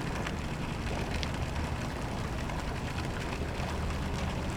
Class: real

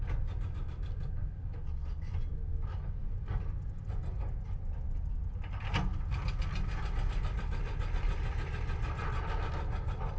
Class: real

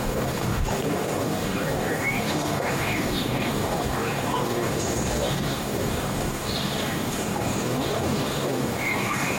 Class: fake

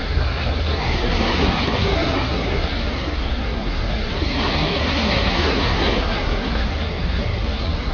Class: fake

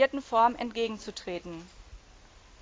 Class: real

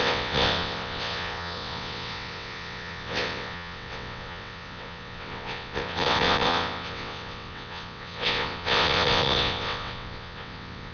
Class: fake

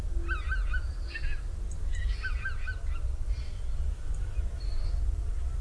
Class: real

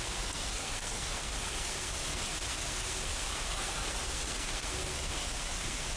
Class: fake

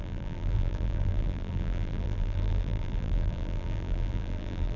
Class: fake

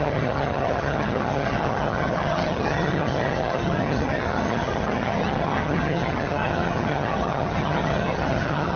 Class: fake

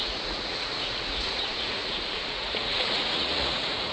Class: fake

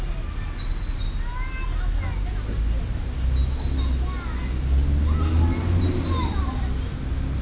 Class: real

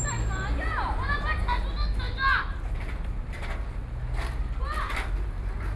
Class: real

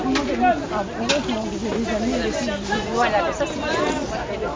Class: real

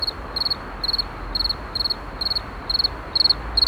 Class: real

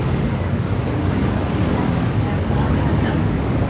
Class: fake